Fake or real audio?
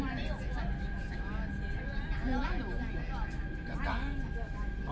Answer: real